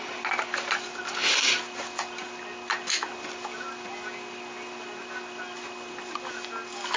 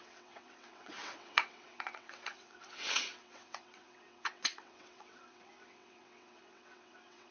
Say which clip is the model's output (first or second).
second